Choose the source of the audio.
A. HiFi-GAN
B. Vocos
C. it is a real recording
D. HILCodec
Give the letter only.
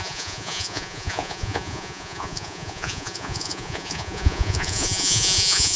B